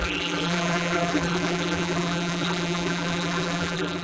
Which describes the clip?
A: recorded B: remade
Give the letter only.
B